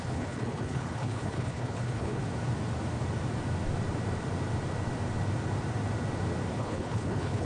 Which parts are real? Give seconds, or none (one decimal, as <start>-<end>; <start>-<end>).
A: 2.2-6.6